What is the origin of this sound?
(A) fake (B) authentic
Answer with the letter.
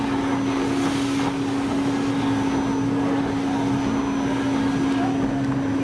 B